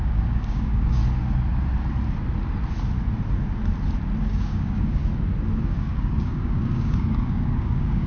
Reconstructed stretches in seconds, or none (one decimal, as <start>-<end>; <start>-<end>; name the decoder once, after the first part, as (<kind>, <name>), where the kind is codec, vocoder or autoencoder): 0.0-1.0 (codec, DAC); 4.2-5.0; 5.6-8.1